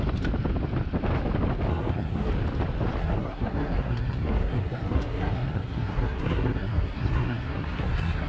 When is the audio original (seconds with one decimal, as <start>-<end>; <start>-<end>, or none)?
0.0-1.7; 2.3-3.0